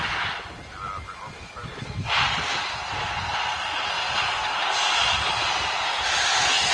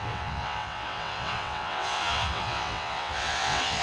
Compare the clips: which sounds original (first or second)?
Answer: first